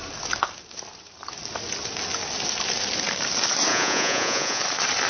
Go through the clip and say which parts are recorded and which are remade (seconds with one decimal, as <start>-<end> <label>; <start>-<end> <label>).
0.0-3.7 recorded; 3.7-4.6 remade; 4.6-5.1 recorded